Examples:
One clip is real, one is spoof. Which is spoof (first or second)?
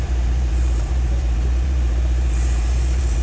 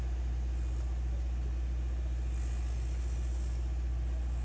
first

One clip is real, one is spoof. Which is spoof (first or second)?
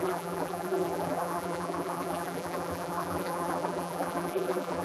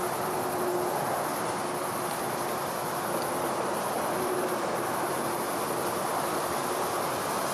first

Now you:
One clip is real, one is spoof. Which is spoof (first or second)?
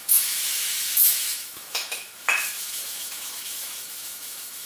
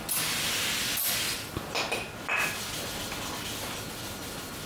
first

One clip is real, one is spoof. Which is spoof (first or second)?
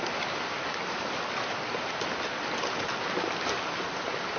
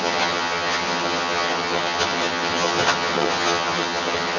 second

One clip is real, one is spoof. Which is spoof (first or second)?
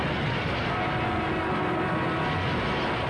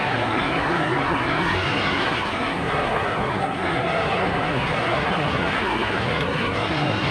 second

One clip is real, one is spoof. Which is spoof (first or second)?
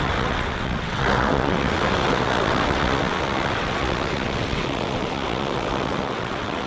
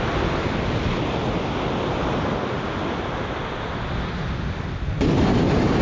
first